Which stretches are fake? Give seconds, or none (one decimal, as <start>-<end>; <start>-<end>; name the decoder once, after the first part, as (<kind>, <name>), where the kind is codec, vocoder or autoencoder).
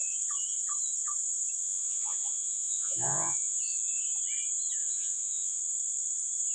1.6-3.6 (vocoder, Vocos); 4.8-5.6